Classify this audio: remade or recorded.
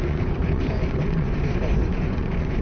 remade